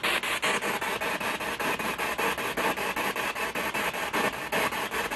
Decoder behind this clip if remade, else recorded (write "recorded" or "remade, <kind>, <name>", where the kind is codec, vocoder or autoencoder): recorded